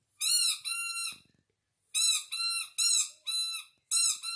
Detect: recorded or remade recorded